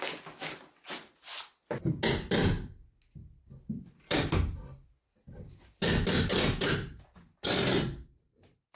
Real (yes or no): yes